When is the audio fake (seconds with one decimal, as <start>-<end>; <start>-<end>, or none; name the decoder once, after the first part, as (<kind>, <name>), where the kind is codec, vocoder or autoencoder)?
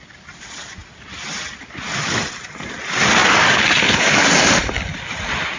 none